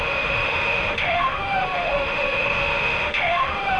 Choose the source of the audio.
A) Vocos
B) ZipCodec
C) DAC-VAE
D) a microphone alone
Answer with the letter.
C